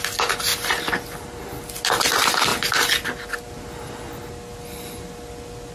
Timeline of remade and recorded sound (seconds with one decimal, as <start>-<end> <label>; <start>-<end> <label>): 0.0-5.7 recorded